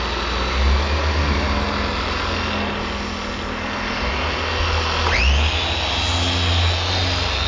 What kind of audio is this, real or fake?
real